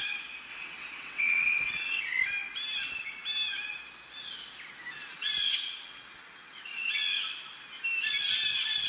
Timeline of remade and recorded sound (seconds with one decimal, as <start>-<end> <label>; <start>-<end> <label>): 0.0-0.5 recorded; 0.5-2.0 remade; 2.0-5.0 recorded; 5.0-7.2 remade; 7.2-8.9 recorded